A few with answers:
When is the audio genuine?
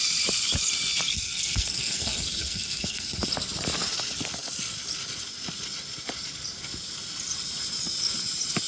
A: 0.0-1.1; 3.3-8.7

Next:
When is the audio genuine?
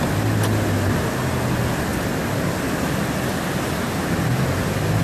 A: 0.0-5.0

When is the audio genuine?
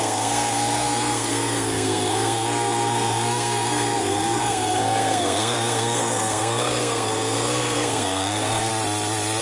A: 8.7-9.4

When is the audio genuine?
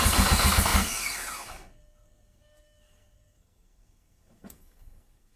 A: none